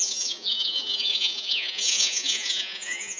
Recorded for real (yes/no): no